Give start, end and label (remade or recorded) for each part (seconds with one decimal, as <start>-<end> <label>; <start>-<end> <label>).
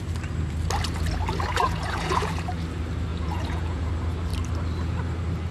0.0-1.5 recorded; 1.5-2.5 remade; 2.5-3.1 recorded; 3.1-3.9 remade; 3.9-5.5 recorded